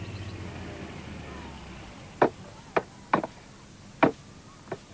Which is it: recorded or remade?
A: recorded